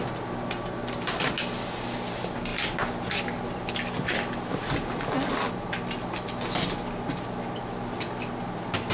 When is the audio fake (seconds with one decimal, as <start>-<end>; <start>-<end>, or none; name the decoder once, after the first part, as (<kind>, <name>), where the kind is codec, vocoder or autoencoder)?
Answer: none